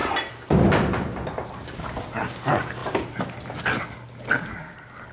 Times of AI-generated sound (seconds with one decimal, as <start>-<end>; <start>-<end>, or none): none